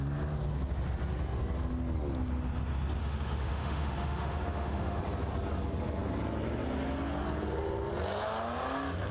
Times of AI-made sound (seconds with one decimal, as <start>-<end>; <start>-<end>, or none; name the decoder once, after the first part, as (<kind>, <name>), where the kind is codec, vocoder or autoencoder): 3.0-5.0 (autoencoder, DAC-VAE)